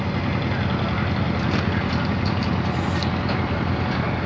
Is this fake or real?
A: real